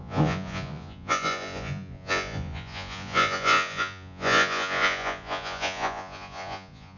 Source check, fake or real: fake